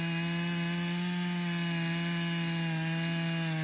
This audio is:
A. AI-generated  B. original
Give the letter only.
B